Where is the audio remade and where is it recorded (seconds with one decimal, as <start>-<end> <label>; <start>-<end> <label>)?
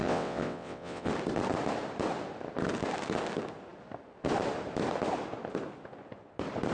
0.0-1.1 remade; 1.1-6.7 recorded